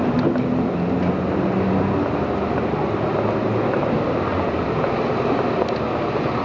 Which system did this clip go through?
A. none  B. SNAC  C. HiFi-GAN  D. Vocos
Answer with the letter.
A